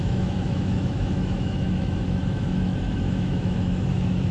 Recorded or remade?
remade